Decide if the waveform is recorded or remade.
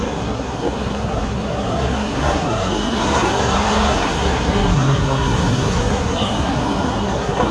remade